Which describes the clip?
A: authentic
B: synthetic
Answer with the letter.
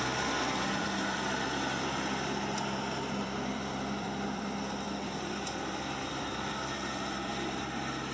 B